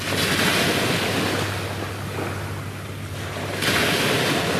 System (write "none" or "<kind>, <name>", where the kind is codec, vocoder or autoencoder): none